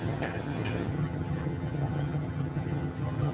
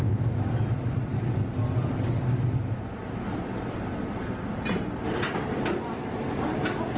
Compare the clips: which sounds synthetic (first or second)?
first